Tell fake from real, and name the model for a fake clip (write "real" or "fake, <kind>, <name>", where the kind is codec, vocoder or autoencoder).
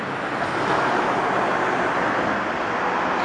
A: real